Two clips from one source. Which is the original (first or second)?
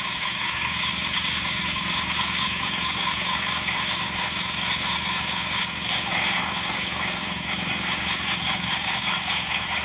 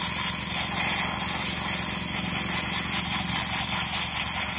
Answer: second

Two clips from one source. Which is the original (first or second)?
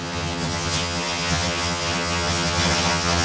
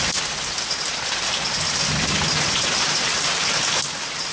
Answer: second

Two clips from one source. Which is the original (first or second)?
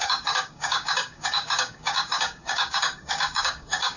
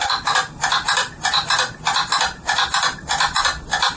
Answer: second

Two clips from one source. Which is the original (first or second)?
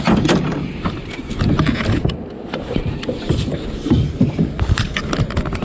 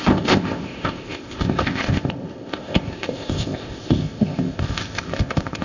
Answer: first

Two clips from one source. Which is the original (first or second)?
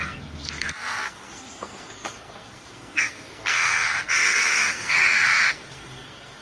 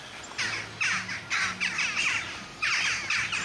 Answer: second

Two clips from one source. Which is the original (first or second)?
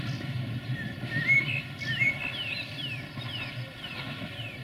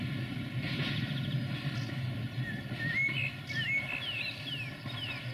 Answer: second